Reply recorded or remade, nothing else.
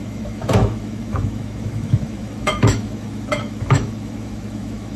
remade